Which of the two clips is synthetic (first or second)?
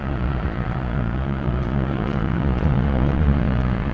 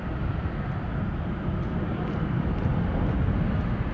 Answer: first